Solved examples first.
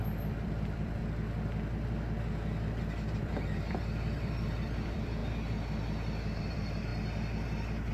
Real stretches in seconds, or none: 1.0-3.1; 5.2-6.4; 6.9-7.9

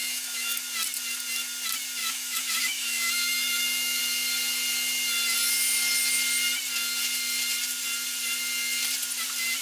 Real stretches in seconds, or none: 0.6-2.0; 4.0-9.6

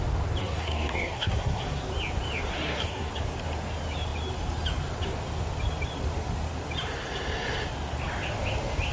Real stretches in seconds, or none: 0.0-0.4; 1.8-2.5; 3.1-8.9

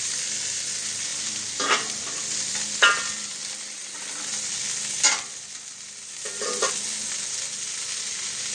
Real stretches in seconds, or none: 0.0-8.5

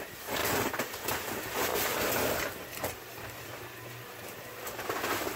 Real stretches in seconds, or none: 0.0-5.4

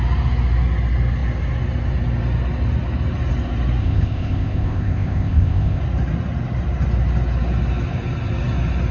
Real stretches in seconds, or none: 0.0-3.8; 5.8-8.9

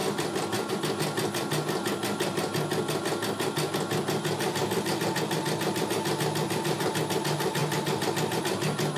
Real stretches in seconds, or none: 0.7-4.6; 5.9-7.6; 8.4-9.0